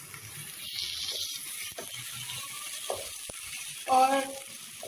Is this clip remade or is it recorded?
recorded